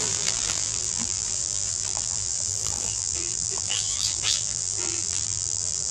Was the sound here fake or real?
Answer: fake